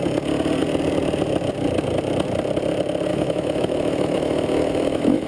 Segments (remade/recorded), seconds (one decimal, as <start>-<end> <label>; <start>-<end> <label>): 0.0-3.1 recorded; 3.1-5.3 remade